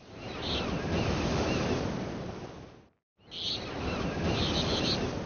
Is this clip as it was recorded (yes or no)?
yes